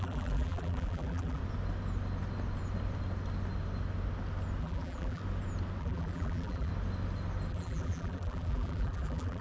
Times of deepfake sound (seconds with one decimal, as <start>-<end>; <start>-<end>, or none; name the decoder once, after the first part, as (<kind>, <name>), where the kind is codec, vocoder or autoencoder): 0.0-1.4 (vocoder, BigVGAN v2); 4.6-5.2; 5.8-6.7; 7.5-9.4